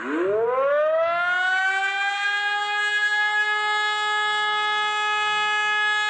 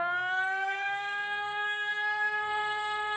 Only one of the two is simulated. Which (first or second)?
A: second